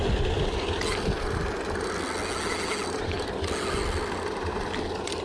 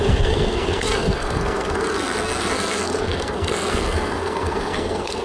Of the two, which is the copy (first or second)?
second